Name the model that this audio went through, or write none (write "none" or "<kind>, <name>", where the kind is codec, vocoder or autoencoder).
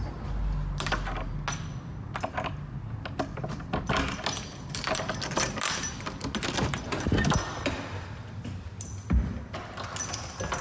none